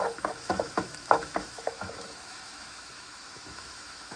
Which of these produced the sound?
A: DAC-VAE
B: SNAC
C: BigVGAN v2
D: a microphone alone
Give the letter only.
A